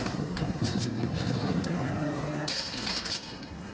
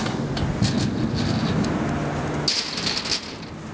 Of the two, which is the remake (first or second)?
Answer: first